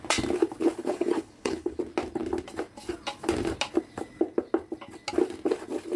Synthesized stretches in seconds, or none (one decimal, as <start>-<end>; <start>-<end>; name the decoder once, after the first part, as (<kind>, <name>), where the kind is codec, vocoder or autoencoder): 0.8-1.8 (codec, HILCodec)